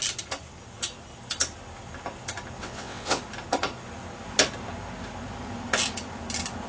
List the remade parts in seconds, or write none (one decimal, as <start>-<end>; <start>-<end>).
2.6-3.2